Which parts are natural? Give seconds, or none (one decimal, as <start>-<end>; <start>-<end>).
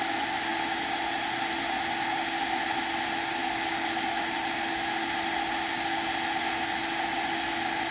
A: 0.0-7.9